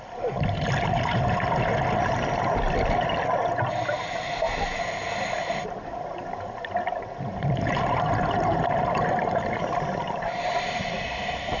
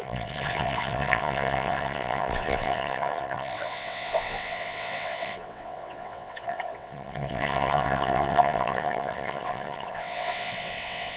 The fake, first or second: second